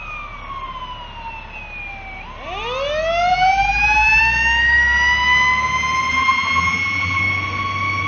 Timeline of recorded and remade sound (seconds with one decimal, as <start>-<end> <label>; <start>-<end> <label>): 0.0-3.3 recorded; 3.3-4.2 remade; 4.2-6.1 recorded; 6.1-7.2 remade; 7.2-8.1 recorded